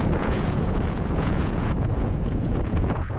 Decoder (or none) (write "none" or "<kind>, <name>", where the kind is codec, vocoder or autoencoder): vocoder, Vocos